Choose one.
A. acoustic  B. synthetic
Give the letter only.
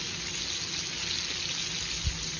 A